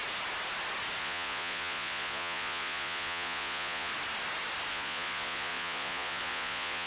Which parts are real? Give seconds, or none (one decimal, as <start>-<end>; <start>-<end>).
0.0-1.0; 3.9-4.7